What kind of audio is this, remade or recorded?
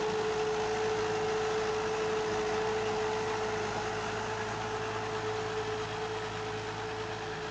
recorded